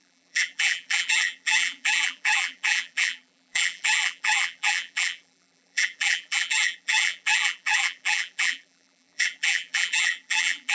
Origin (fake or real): fake